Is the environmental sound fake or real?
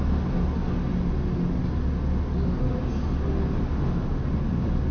real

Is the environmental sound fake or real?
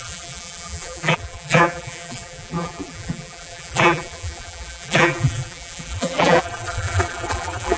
fake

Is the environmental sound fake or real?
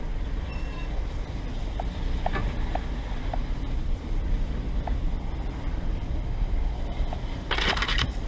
fake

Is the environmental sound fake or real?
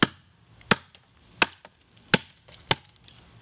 real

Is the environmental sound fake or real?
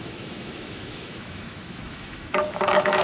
fake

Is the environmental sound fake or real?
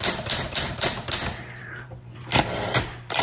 fake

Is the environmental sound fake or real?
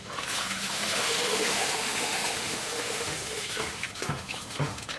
fake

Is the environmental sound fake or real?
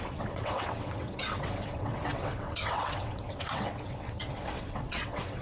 fake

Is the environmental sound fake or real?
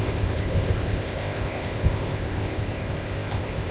fake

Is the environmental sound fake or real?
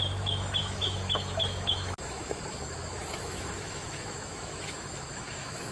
fake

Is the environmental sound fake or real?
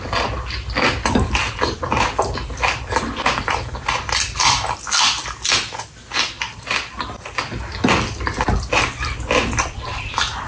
real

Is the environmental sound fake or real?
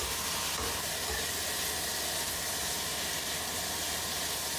real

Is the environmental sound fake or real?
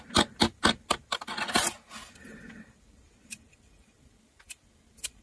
real